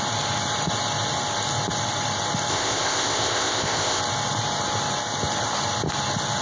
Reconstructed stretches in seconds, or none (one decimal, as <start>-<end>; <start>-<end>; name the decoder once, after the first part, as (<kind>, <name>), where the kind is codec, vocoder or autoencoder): 2.5-4.0 (codec, ZipCodec)